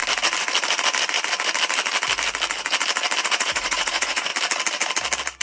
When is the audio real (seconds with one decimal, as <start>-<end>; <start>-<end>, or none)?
0.0-3.2; 4.3-5.4